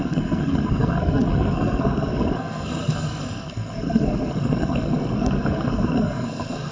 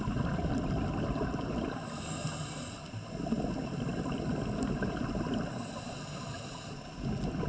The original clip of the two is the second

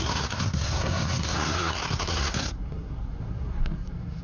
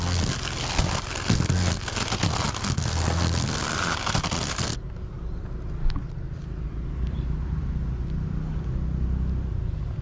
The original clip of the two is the second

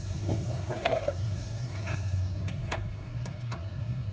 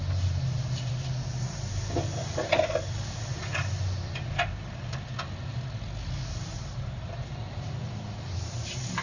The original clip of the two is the second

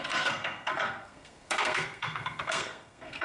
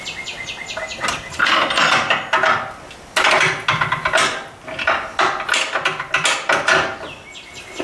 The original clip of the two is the second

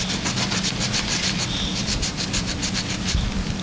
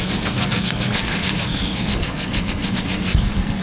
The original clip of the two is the first